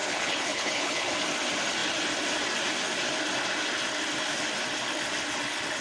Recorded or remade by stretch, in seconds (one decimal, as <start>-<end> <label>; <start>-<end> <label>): 0.0-1.1 remade; 1.1-5.8 recorded